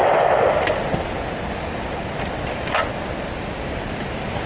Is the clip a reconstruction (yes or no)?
no